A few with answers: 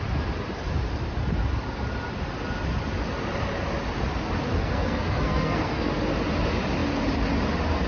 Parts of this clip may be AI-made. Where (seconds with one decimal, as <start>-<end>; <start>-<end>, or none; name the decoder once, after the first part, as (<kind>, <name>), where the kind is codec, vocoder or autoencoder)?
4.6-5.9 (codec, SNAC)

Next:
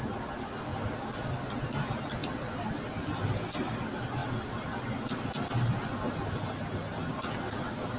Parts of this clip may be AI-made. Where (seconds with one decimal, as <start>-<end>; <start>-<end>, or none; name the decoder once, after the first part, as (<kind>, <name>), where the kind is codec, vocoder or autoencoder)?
none

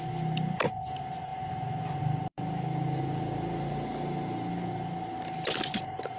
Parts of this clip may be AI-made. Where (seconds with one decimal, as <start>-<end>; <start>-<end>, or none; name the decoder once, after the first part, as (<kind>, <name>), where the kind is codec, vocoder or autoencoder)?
none